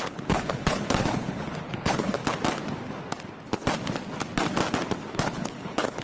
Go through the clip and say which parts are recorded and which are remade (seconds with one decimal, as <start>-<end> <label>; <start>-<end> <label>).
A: 0.0-2.2 remade; 2.2-5.1 recorded; 5.1-6.0 remade